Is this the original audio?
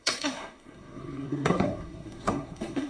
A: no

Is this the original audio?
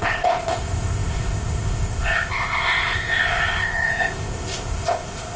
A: no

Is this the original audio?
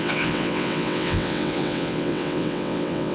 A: no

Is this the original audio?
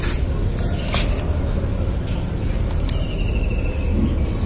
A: yes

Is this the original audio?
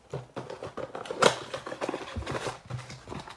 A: yes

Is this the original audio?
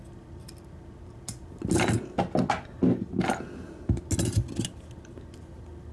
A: yes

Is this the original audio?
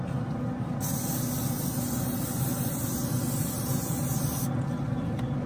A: yes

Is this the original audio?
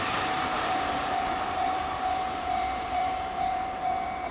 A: no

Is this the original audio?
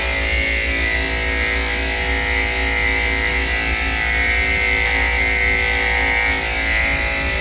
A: yes